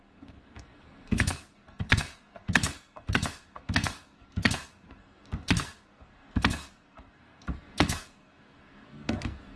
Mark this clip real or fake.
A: fake